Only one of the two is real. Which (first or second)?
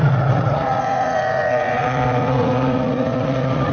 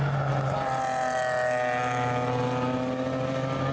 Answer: second